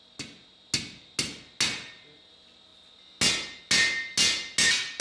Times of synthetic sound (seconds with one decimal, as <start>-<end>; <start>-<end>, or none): none